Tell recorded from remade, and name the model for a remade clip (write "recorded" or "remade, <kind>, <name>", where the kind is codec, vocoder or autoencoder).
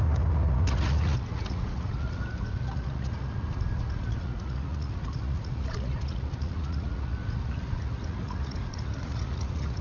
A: remade, vocoder, Vocos